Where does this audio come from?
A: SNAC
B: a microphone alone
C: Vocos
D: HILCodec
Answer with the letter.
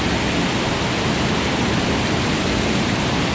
B